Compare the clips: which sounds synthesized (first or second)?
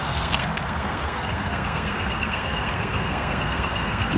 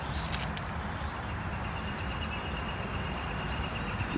first